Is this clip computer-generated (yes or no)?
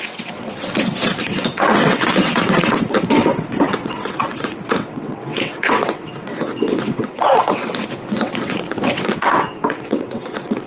yes